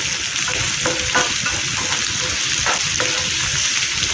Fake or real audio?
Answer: real